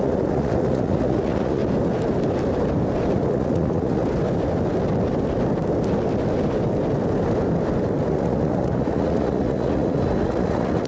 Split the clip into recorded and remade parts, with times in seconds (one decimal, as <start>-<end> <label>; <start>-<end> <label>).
0.0-1.6 remade; 1.6-3.1 recorded; 3.1-4.0 remade; 4.0-8.1 recorded; 8.1-10.9 remade